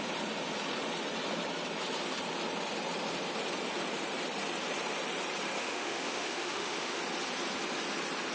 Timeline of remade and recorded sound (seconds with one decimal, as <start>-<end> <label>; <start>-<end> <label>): 0.0-5.6 recorded; 5.6-7.0 remade; 7.0-8.3 recorded